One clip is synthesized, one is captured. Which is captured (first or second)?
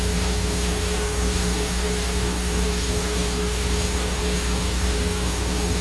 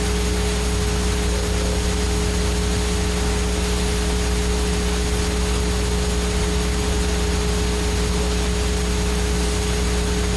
second